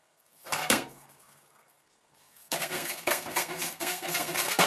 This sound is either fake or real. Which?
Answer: fake